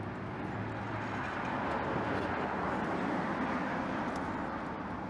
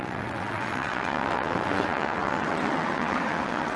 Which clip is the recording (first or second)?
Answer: first